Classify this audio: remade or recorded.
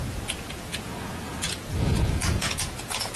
remade